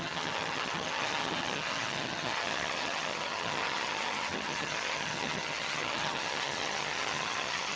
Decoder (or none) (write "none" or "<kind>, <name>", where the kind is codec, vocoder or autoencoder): vocoder, HiFi-GAN